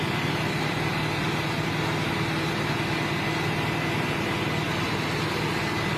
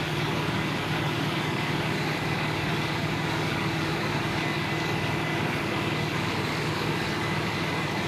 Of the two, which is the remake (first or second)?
second